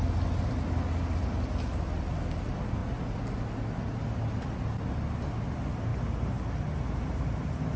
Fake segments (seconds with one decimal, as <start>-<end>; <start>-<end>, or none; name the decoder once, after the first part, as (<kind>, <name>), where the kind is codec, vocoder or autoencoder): none